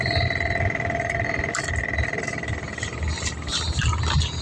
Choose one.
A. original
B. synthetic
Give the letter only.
A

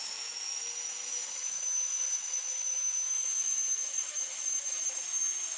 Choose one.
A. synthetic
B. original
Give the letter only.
A